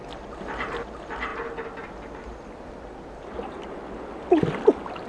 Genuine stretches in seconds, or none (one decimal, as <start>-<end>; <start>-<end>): 0.9-5.1